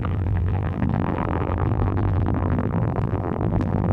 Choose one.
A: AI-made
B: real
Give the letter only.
A